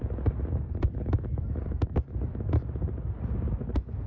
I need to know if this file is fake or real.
real